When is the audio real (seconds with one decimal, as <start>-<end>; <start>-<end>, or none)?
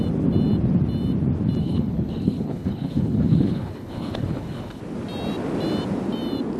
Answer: 0.0-1.6; 4.8-6.6